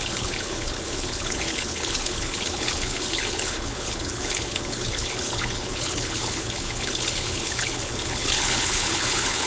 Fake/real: fake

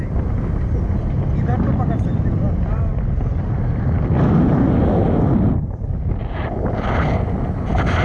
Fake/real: real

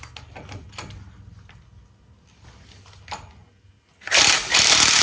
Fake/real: real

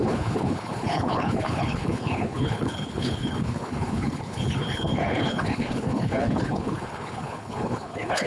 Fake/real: fake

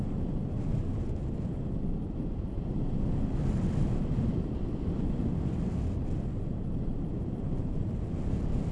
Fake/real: real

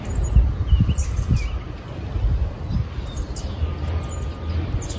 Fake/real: real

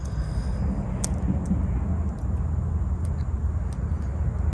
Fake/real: real